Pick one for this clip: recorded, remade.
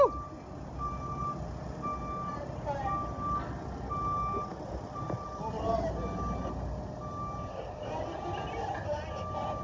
recorded